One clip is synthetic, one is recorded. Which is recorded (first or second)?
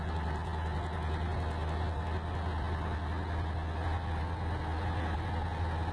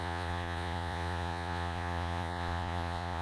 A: first